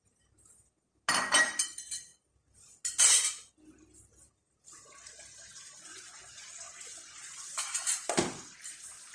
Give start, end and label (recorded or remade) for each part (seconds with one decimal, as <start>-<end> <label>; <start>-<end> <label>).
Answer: 0.0-5.9 recorded; 5.9-7.6 remade; 7.6-9.1 recorded